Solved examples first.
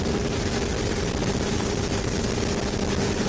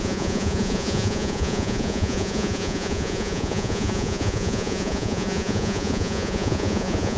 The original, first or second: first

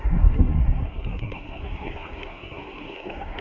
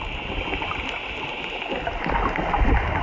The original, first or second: second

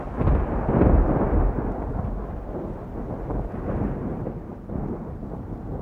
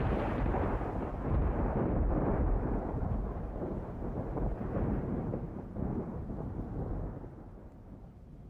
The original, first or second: first